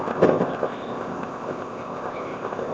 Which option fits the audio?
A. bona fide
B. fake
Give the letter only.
B